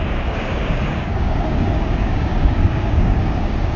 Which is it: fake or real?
fake